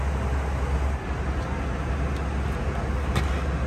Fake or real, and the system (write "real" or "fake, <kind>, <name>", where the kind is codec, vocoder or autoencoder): real